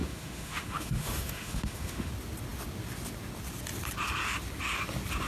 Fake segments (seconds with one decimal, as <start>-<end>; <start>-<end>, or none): 0.0-2.1